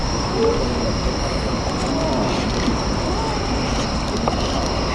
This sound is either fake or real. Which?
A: real